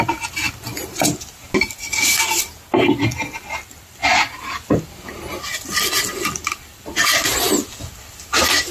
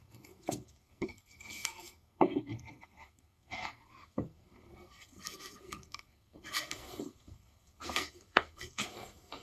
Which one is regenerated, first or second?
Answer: second